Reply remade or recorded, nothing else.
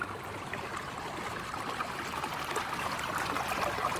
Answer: recorded